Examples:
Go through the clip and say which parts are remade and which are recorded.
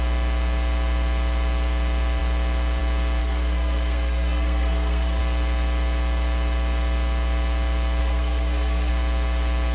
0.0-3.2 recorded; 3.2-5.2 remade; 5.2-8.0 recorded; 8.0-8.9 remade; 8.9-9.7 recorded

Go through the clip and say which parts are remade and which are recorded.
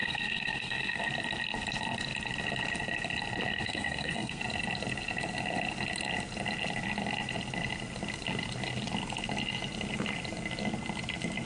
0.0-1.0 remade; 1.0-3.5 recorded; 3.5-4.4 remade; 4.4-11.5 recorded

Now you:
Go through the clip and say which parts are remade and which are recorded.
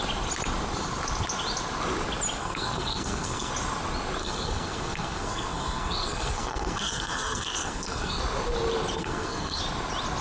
0.0-2.4 recorded; 2.4-3.5 remade; 3.5-4.2 recorded; 4.2-8.2 remade; 8.2-9.0 recorded; 9.0-9.6 remade; 9.6-10.2 recorded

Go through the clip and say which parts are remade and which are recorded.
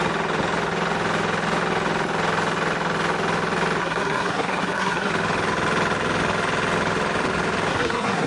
0.0-3.8 recorded; 3.8-5.1 remade; 5.1-7.7 recorded; 7.7-8.3 remade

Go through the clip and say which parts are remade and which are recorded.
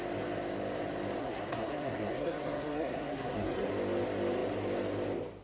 0.0-1.2 recorded; 1.2-3.7 remade; 3.7-5.4 recorded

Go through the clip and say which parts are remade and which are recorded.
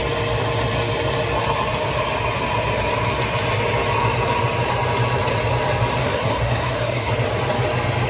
0.0-6.0 recorded; 6.0-7.1 remade; 7.1-8.1 recorded